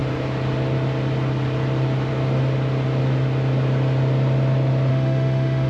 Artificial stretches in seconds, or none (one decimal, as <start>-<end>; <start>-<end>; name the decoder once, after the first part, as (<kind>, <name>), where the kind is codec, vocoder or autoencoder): 4.9-5.7 (autoencoder, DAC-VAE)